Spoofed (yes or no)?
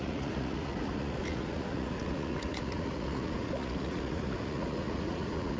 yes